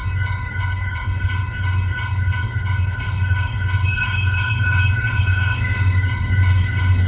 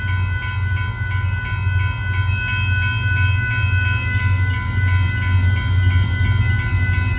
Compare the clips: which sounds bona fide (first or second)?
second